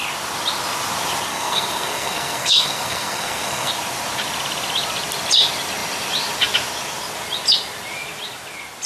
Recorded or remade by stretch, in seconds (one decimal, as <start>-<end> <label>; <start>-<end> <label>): 0.0-1.3 recorded; 1.3-3.7 remade; 3.7-8.9 recorded